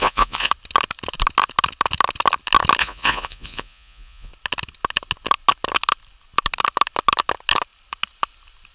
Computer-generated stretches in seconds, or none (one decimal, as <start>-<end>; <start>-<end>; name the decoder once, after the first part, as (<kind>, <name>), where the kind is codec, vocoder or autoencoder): 0.0-0.5 (vocoder, Vocos); 2.8-4.3